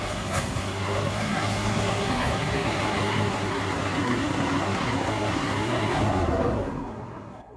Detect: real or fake fake